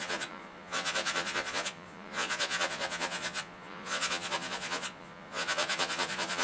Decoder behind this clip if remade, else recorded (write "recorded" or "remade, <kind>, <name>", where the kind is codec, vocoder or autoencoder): remade, vocoder, Vocos